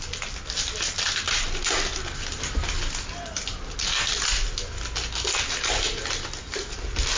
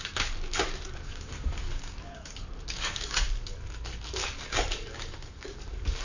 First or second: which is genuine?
first